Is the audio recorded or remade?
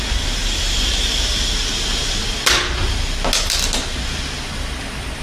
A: recorded